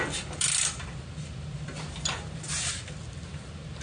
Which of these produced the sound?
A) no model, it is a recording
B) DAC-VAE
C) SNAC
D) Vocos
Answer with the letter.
A